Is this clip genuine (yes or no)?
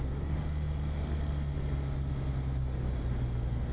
yes